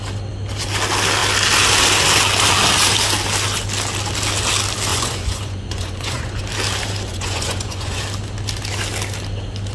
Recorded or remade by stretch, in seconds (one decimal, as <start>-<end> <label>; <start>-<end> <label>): 0.0-4.9 recorded; 4.9-6.4 remade; 6.4-7.1 recorded; 7.1-8.0 remade; 8.0-9.7 recorded